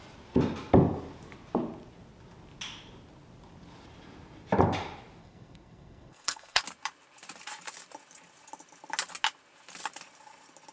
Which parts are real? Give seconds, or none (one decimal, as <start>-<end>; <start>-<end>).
0.0-5.2; 6.6-10.7